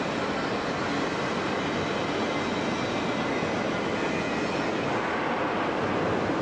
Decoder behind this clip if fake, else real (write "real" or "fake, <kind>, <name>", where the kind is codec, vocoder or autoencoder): real